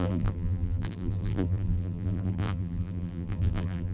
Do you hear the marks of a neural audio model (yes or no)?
yes